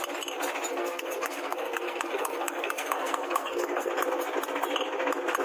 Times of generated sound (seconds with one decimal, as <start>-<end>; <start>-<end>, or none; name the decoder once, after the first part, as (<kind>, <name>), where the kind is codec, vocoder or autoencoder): 0.7-3.9 (codec, SNAC)